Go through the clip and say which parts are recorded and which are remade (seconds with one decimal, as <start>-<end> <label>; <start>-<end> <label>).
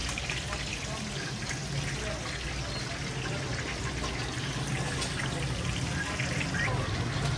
0.0-7.4 recorded